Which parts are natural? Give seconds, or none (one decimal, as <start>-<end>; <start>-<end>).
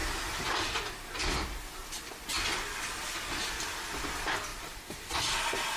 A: 0.0-4.5; 5.1-5.8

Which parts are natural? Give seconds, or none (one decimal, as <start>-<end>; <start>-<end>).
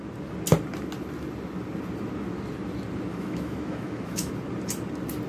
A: 0.0-3.1; 4.3-5.3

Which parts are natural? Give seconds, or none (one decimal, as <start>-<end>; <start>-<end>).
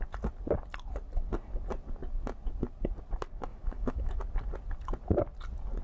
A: 0.0-3.5; 4.2-5.8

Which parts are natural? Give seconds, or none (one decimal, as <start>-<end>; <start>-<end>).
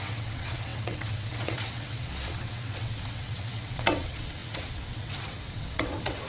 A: none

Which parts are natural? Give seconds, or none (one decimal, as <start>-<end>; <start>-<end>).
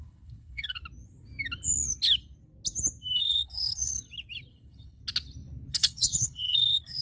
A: 0.8-3.2; 3.9-4.5; 5.0-5.7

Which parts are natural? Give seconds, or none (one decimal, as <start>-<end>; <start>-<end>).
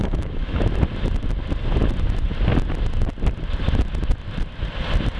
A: 0.6-5.2